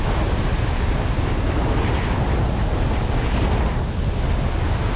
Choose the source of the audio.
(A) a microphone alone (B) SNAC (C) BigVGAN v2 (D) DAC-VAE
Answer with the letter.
A